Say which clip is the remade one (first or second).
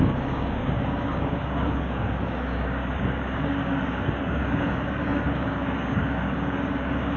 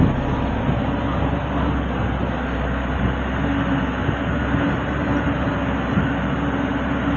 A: first